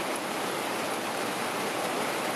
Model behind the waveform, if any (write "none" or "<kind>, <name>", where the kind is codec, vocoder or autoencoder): vocoder, BigVGAN v2